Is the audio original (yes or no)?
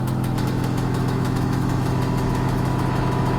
no